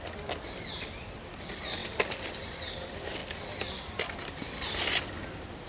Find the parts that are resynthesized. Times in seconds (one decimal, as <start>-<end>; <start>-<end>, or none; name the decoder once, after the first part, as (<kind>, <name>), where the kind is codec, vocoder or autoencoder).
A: none